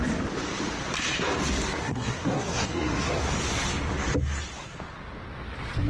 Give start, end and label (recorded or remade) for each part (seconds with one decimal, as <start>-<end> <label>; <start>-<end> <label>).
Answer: 0.0-1.8 recorded; 1.8-3.2 remade; 3.2-5.9 recorded